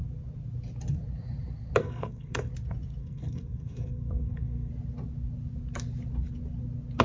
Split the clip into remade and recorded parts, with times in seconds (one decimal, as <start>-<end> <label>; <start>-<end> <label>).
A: 0.0-1.8 recorded; 1.8-2.5 remade; 2.5-3.0 recorded; 3.0-4.7 remade; 4.7-7.0 recorded